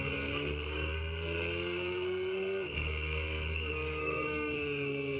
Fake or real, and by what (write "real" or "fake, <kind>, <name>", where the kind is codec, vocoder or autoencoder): fake, codec, SNAC